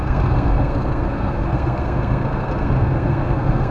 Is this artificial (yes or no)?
yes